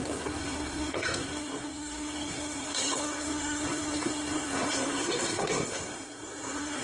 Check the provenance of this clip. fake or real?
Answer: fake